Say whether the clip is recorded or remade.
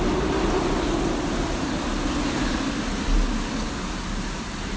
recorded